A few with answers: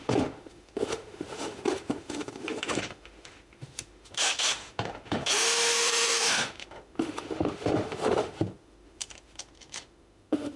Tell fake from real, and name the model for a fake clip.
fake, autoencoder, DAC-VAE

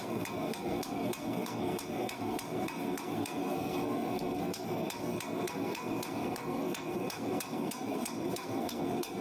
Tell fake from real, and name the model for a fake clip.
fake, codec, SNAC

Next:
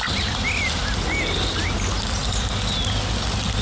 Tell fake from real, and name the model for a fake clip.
real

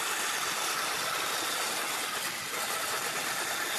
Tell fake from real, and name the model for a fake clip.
real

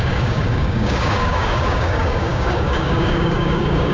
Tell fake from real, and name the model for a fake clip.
fake, codec, DAC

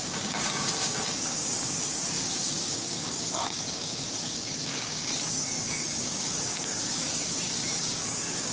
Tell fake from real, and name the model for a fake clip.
fake, codec, DAC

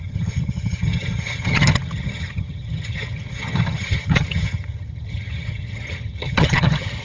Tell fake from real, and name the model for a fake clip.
fake, vocoder, HiFi-GAN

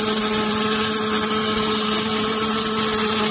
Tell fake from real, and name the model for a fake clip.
real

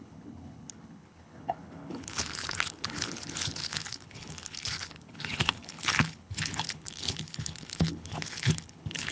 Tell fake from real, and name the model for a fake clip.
fake, codec, HILCodec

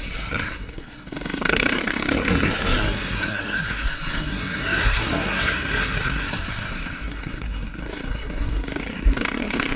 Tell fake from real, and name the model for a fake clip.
fake, codec, SNAC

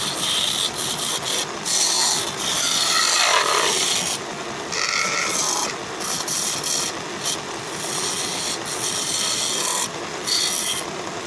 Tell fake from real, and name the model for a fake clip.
real